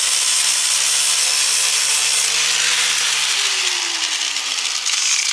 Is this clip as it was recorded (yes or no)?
yes